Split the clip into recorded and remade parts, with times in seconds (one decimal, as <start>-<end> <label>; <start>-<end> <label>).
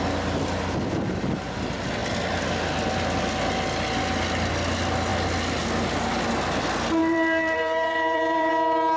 0.0-7.0 recorded; 7.0-8.5 remade; 8.5-9.0 recorded